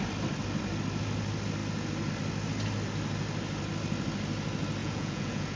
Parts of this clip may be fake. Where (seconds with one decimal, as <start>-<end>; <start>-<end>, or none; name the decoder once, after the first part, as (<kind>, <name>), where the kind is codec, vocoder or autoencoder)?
4.8-5.6 (vocoder, Vocos)